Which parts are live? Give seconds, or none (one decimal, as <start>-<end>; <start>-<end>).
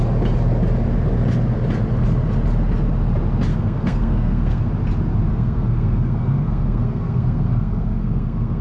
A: 0.0-3.5; 4.7-5.3